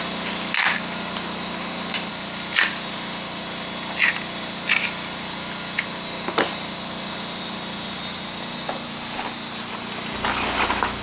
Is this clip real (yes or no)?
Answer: yes